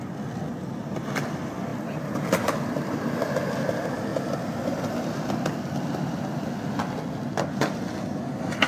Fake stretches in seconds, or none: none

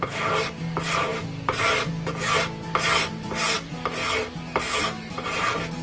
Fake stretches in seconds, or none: none

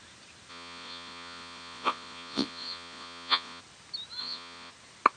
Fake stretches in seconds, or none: 0.5-3.6; 4.2-4.7

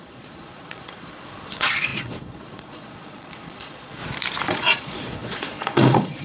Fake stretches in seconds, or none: 0.0-4.0; 4.5-6.2

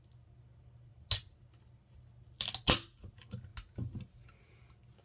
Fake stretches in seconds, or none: none

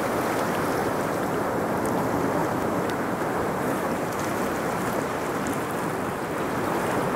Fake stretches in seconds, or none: 0.8-1.4; 2.4-5.5